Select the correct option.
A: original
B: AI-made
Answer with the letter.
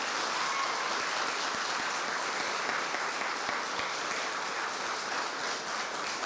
A